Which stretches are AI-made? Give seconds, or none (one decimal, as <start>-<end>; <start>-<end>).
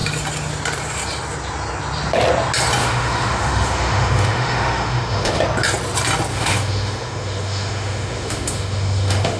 2.8-5.4; 6.3-9.4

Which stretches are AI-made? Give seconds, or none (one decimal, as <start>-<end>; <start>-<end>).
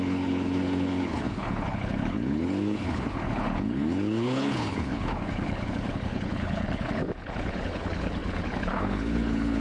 0.0-9.6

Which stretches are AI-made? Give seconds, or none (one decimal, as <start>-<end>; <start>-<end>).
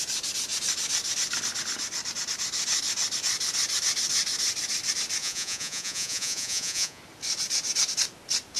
5.2-7.0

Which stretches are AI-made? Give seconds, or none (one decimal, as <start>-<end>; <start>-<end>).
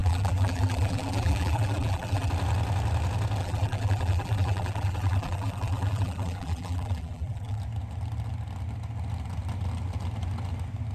0.0-2.3; 3.4-7.6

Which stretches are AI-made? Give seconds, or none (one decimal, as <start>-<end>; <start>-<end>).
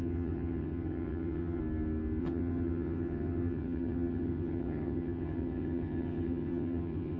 0.0-1.6; 2.2-7.2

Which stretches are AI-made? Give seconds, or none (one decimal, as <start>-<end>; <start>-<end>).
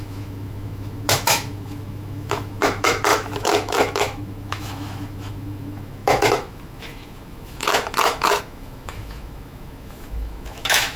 0.0-11.0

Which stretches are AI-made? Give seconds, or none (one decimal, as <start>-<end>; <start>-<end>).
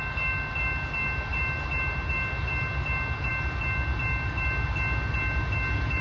none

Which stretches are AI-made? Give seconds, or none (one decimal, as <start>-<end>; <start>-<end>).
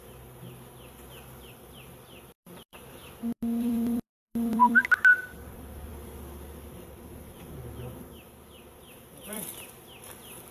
0.0-10.5